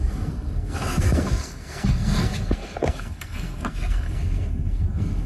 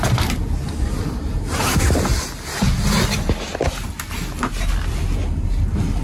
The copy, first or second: first